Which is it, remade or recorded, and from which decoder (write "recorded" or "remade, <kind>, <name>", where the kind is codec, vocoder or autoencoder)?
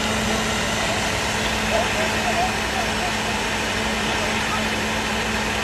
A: recorded